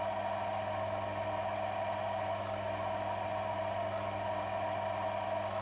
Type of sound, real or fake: real